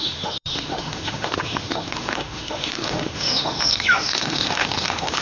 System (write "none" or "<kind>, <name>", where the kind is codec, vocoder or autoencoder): autoencoder, DAC-VAE